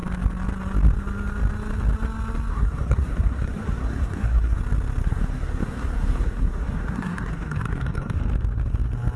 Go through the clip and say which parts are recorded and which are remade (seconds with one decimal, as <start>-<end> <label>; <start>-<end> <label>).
0.0-2.5 recorded; 2.5-4.6 remade; 4.6-5.0 recorded; 5.0-8.2 remade; 8.2-9.2 recorded